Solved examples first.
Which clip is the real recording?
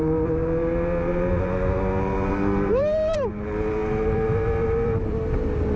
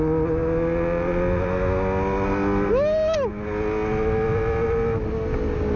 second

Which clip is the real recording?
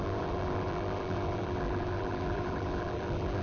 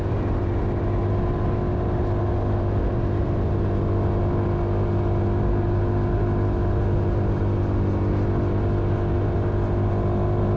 second